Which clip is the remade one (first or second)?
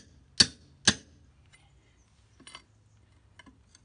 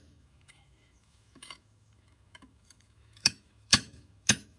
second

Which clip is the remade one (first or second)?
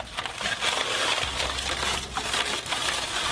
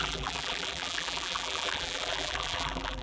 second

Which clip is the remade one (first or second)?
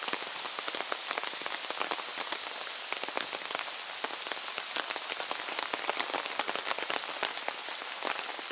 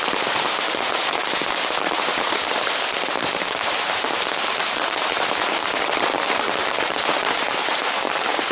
second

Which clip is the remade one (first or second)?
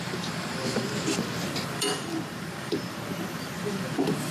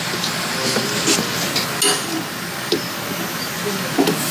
first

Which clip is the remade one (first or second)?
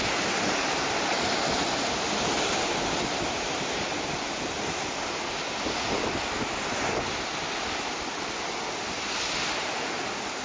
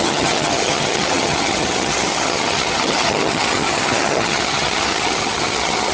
second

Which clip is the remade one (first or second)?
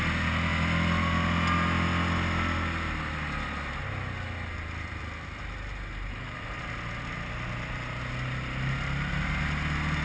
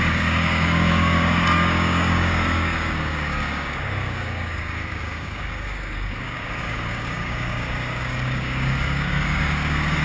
second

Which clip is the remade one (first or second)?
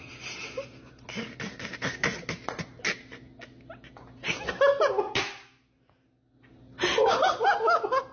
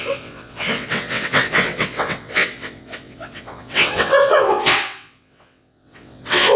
second